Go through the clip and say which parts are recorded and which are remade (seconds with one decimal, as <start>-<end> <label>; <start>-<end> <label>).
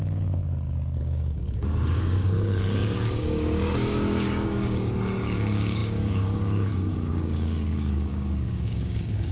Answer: 0.0-0.4 remade; 0.4-1.0 recorded; 1.0-9.3 remade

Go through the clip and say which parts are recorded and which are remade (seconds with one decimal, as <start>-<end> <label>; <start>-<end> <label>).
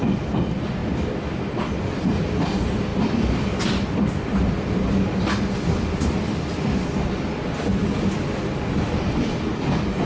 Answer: 0.0-10.1 recorded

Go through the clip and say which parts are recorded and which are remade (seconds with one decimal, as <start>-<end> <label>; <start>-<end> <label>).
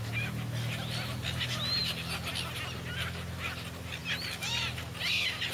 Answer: 0.0-5.5 recorded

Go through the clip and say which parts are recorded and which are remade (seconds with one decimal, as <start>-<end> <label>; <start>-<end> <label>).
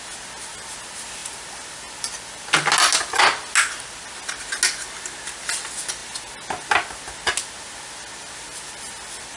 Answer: 0.0-9.4 recorded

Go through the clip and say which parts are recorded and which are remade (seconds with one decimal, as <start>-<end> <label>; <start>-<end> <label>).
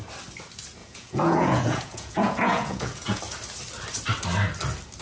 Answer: 0.0-0.8 recorded; 0.8-3.2 remade; 3.2-5.0 recorded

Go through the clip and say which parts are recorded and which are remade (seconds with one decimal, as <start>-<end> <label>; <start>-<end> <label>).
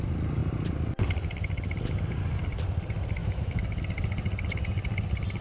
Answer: 0.0-3.2 recorded; 3.2-3.8 remade; 3.8-5.4 recorded